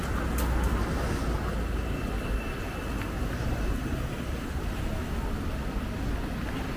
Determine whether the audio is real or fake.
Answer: real